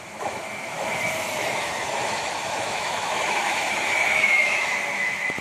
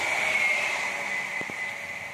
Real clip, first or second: second